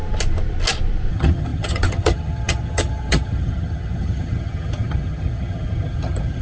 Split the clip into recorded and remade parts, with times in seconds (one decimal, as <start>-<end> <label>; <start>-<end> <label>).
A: 0.0-1.1 recorded; 1.1-6.4 remade